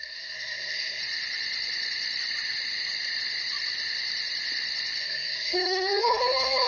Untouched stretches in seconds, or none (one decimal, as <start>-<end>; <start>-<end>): 1.0-5.0